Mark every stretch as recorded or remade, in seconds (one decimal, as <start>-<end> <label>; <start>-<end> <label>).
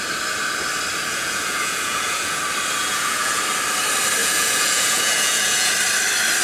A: 0.0-1.1 recorded; 1.1-2.4 remade; 2.4-2.8 recorded; 2.8-3.4 remade; 3.4-4.2 recorded; 4.2-5.7 remade; 5.7-6.4 recorded